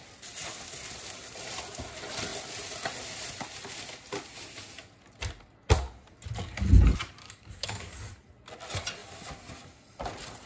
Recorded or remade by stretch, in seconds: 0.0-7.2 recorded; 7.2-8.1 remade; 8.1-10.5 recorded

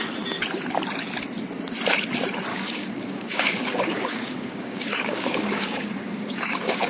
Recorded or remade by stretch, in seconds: 0.0-2.5 recorded; 2.5-6.9 remade

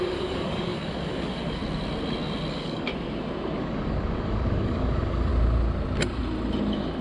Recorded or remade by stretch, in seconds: 0.0-1.6 remade; 1.6-2.5 recorded; 2.5-2.9 remade; 2.9-3.6 recorded; 3.6-5.3 remade; 5.3-7.0 recorded

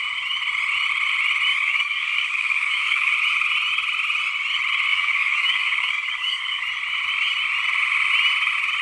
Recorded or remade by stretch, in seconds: 0.0-1.5 recorded; 1.5-3.1 remade; 3.1-4.9 recorded; 4.9-6.6 remade; 6.6-8.8 recorded

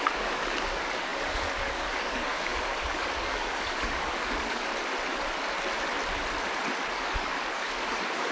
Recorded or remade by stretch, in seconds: 0.0-4.7 remade; 4.7-6.9 recorded; 6.9-8.3 remade

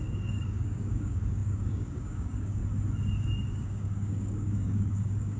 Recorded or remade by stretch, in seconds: 0.0-2.6 remade; 2.6-3.5 recorded; 3.5-5.4 remade

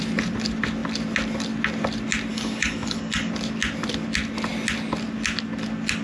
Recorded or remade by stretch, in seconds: 0.0-2.3 recorded; 2.3-3.3 remade; 3.3-6.0 recorded

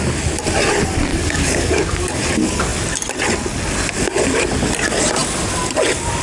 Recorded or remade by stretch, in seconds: 0.0-1.1 recorded; 1.1-2.2 remade; 2.2-6.2 recorded